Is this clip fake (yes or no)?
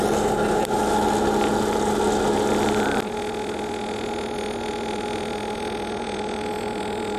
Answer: no